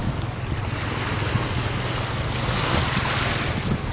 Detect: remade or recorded recorded